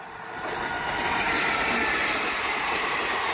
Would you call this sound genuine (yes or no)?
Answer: yes